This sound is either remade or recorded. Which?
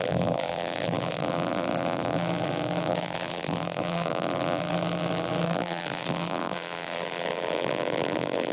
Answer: remade